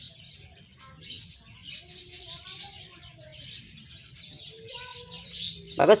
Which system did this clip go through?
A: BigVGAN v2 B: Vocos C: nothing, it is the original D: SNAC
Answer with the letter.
C